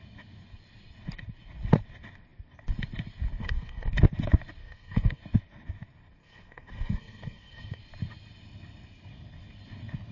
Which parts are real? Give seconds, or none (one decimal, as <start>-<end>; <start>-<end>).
0.0-3.4; 3.9-4.6; 5.2-6.2; 7.8-10.1